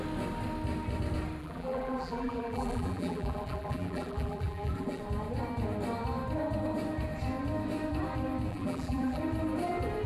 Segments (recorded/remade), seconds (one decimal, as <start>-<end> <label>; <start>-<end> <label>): 0.0-1.4 recorded; 1.4-5.0 remade; 5.0-8.5 recorded; 8.5-9.2 remade; 9.2-10.1 recorded